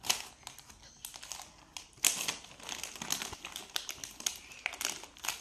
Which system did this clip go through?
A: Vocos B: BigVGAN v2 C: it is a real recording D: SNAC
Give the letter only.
C